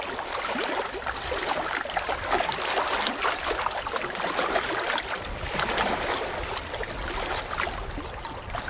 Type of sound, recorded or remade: recorded